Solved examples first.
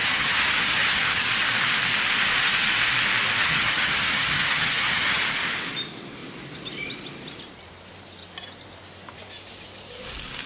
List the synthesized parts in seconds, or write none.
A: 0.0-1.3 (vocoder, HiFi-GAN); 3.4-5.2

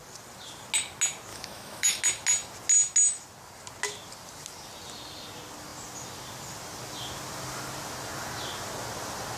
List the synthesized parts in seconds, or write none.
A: 1.3-2.0 (autoencoder, DAC-VAE)

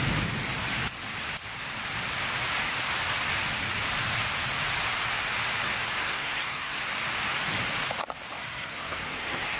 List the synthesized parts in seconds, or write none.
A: 6.0-6.8 (codec, SNAC); 8.4-9.6

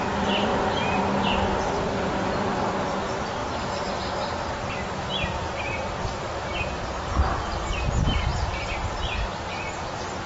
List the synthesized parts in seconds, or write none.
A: none

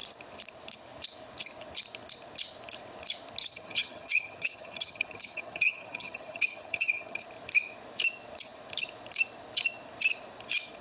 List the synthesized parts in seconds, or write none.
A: 3.4-7.2 (vocoder, HiFi-GAN)

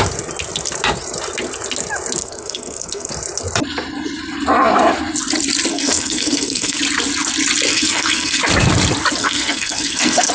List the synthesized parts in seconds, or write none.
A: 2.2-3.1 (codec, SNAC); 5.7-6.8; 7.7-8.4; 9.2-10.3

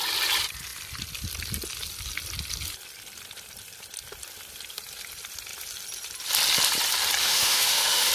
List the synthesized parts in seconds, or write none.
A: 7.2-8.1 (autoencoder, DAC-VAE)